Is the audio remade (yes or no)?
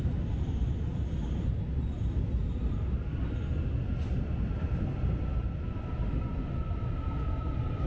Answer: no